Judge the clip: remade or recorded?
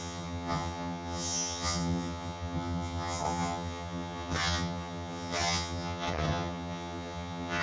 remade